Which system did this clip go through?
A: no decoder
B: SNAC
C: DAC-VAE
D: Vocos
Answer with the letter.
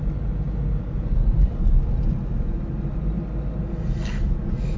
A